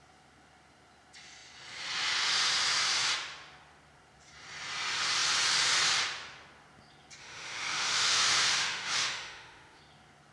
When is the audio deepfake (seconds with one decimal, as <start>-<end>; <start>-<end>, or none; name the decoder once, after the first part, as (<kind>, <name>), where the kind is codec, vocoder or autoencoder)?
7.2-9.8 (autoencoder, DAC-VAE)

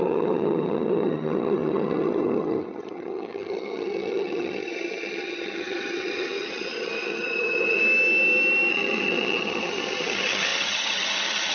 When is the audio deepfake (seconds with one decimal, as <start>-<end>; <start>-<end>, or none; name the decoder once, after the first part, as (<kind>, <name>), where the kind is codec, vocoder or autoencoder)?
0.0-7.8 (vocoder, HiFi-GAN); 8.7-11.5

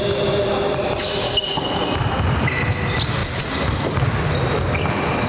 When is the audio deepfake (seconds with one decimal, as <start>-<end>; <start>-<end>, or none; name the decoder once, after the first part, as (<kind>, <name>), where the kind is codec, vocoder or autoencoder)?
none

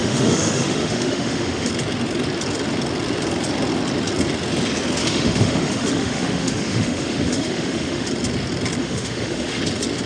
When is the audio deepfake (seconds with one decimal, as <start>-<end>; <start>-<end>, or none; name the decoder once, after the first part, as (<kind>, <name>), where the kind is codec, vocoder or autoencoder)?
0.0-1.7 (autoencoder, DAC-VAE); 5.0-8.1; 8.8-9.6